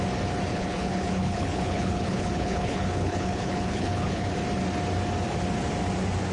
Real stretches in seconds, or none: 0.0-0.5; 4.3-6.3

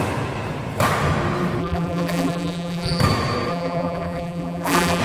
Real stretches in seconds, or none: 0.0-1.6; 3.0-3.5

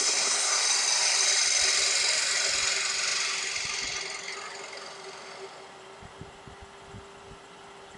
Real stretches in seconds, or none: 0.6-8.0